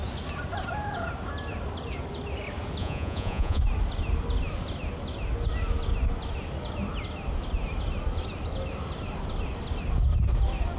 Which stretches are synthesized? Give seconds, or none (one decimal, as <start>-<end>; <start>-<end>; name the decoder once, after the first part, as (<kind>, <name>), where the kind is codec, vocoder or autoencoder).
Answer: 2.8-3.6 (vocoder, Vocos)